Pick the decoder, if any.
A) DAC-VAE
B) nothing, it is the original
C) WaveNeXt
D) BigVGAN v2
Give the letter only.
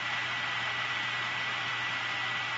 B